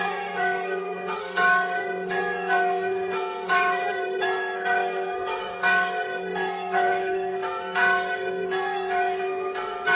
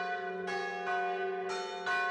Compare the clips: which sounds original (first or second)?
second